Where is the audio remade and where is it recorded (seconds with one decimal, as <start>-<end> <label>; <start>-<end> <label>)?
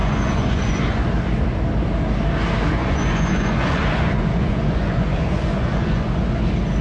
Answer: 0.0-1.0 remade; 1.0-2.8 recorded; 2.8-6.3 remade; 6.3-6.8 recorded